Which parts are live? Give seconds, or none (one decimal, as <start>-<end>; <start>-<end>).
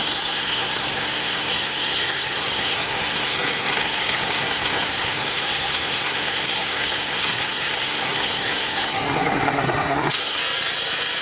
10.4-11.2